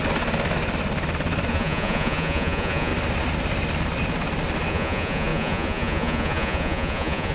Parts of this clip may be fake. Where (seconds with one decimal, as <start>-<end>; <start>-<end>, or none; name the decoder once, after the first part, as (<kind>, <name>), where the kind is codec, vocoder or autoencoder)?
1.5-2.9 (vocoder, Vocos); 4.7-7.3